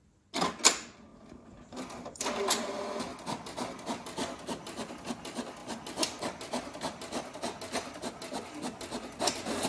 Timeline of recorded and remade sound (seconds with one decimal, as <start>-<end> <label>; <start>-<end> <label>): 0.0-1.1 recorded; 1.1-2.8 remade; 2.8-9.7 recorded